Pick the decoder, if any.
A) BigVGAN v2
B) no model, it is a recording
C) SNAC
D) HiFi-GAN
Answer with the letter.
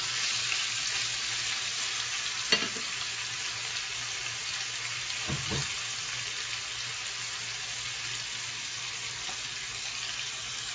B